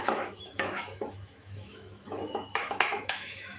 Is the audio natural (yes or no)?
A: no